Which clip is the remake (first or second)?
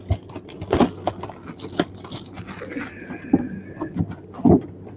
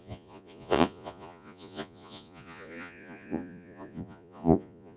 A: second